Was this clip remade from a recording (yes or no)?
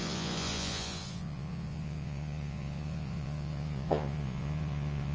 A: yes